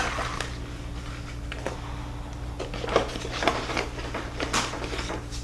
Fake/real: real